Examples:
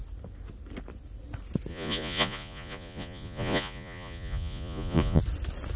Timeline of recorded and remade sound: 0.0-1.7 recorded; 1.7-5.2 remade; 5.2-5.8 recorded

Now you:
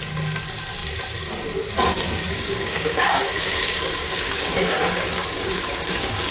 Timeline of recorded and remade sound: 0.0-2.3 recorded; 2.3-6.3 remade

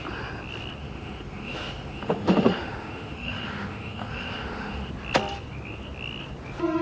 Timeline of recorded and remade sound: 0.0-0.8 recorded; 0.8-4.9 remade; 4.9-6.8 recorded